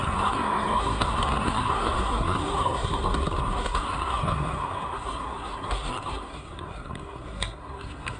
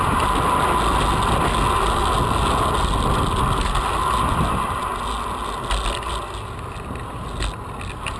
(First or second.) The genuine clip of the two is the second